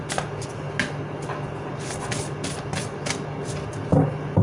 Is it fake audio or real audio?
real